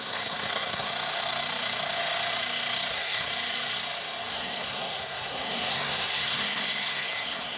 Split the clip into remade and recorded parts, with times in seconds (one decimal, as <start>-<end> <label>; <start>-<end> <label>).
0.0-0.9 remade; 0.9-2.9 recorded; 2.9-3.3 remade; 3.3-4.3 recorded; 4.3-7.6 remade